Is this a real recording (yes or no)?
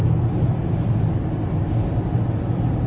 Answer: yes